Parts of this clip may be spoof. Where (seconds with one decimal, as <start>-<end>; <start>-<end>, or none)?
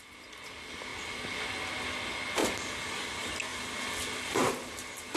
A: none